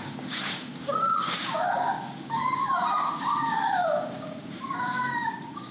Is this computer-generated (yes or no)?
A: yes